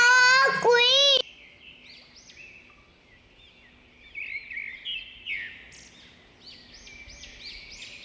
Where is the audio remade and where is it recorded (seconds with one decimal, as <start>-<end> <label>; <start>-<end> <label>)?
0.0-8.0 recorded